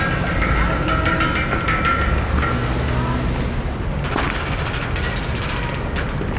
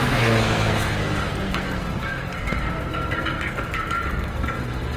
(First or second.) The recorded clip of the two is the first